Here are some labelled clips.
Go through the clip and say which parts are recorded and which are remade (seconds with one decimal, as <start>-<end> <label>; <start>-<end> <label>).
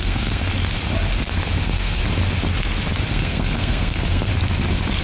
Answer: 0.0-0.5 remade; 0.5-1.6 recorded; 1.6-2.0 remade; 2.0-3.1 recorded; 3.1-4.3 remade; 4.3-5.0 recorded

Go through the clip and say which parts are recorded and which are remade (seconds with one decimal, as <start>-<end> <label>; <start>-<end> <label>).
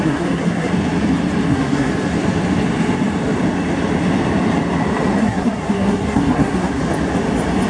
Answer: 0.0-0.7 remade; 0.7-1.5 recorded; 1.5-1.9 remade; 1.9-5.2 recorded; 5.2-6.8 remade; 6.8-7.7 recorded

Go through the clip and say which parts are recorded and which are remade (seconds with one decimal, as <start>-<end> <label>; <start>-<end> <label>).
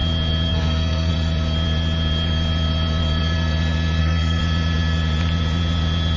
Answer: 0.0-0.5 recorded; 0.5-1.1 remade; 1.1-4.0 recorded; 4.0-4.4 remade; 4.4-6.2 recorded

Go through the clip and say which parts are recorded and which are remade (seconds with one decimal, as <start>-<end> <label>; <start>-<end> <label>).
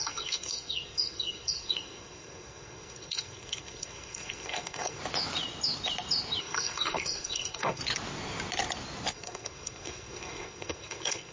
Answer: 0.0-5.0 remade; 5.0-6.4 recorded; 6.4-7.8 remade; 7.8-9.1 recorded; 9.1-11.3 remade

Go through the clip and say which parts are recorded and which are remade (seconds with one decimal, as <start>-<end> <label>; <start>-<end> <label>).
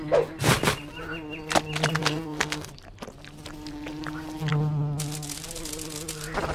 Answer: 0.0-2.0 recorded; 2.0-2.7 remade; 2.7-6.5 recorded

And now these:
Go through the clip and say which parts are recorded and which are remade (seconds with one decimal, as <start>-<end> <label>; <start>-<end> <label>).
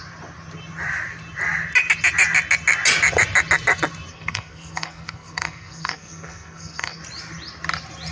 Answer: 0.0-4.1 recorded; 4.1-7.0 remade; 7.0-8.1 recorded